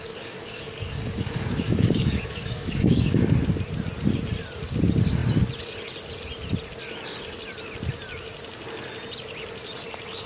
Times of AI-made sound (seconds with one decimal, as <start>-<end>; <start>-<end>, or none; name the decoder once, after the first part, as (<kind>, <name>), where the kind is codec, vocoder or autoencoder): 0.0-3.1 (codec, DAC)